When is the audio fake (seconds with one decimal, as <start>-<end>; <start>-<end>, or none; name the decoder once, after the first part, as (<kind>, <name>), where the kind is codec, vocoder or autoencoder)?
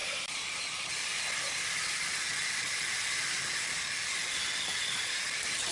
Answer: none